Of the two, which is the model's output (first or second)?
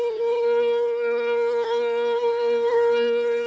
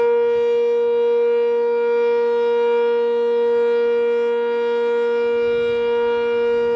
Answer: first